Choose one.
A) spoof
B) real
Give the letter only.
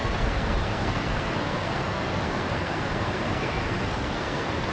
A